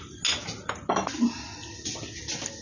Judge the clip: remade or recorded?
recorded